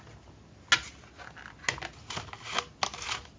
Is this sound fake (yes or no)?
no